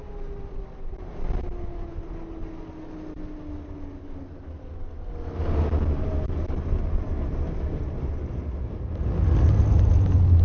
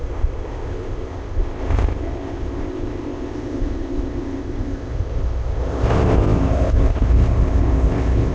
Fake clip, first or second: second